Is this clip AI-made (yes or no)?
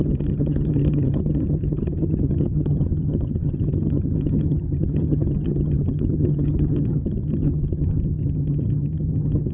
yes